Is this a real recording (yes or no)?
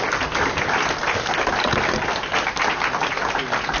yes